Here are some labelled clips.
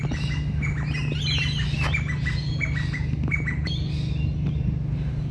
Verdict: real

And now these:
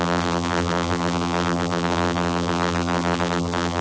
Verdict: fake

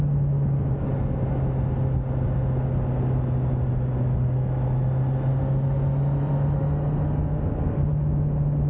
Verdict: real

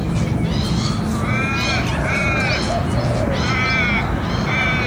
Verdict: real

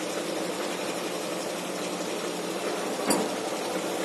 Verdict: real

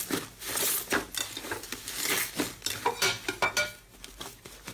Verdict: real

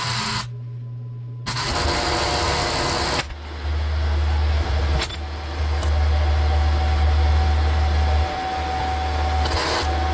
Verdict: real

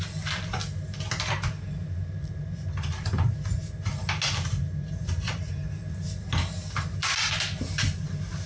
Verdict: real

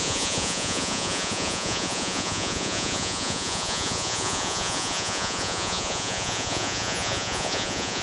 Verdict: fake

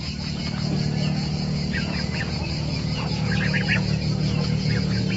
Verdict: fake